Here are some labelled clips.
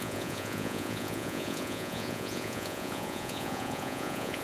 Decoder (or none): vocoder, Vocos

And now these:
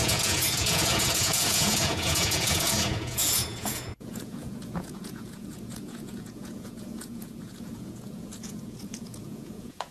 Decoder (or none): vocoder, Vocos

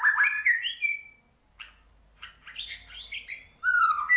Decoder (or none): none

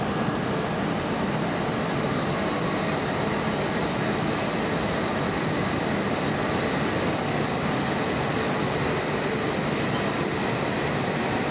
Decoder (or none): none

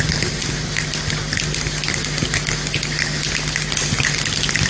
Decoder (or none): none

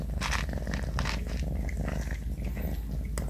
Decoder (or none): none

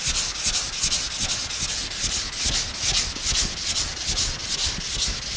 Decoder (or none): none